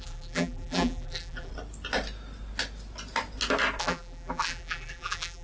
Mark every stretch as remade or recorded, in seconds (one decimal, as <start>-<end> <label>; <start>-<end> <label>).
0.0-1.5 remade; 1.5-3.8 recorded; 3.8-5.4 remade

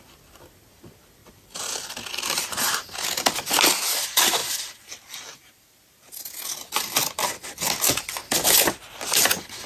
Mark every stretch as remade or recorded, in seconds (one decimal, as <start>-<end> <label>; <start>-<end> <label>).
0.0-1.2 recorded; 1.2-2.5 remade; 2.5-9.7 recorded